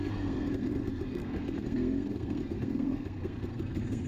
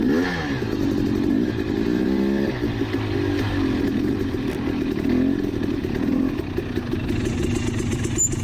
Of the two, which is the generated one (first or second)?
first